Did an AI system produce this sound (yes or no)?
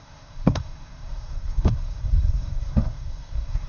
yes